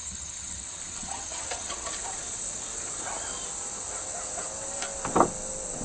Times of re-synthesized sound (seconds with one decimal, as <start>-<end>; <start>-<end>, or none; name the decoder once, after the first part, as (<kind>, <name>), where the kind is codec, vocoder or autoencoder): 0.0-1.9 (vocoder, HiFi-GAN)